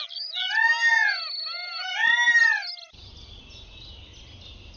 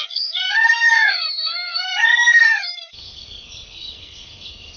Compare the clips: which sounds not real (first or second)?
second